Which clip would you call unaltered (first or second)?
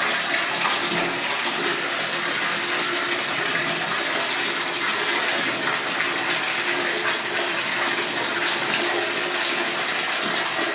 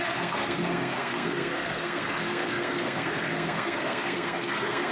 first